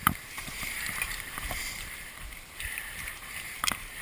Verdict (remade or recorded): remade